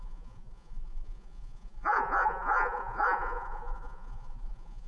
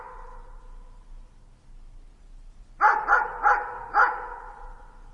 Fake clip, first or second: first